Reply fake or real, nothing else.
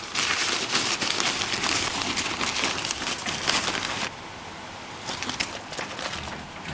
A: real